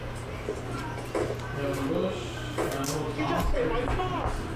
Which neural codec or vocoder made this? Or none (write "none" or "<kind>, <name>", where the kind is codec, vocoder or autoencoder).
none